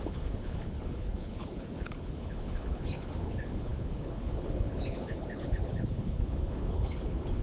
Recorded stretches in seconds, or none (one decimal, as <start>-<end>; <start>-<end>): none